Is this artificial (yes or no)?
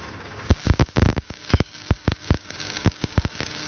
yes